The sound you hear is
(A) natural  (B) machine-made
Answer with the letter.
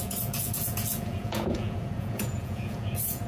B